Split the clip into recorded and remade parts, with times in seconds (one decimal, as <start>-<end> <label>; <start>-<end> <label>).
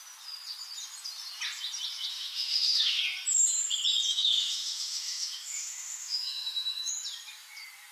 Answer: 0.0-2.1 recorded; 2.1-3.0 remade; 3.0-4.1 recorded; 4.1-6.9 remade; 6.9-7.9 recorded